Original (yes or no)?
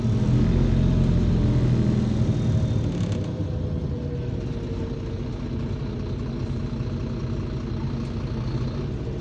yes